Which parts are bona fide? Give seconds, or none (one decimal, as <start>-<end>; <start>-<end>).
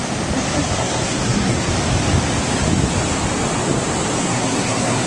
0.0-0.8; 1.7-4.2